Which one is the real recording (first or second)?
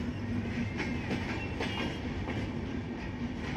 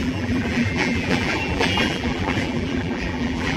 first